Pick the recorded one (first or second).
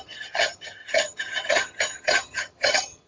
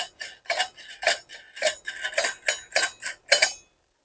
second